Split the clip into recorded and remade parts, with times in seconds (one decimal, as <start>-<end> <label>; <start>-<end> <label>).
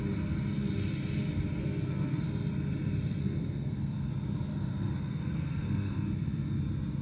0.0-1.6 recorded; 1.6-2.2 remade; 2.2-3.2 recorded; 3.2-4.1 remade; 4.1-4.5 recorded; 4.5-6.6 remade; 6.6-7.0 recorded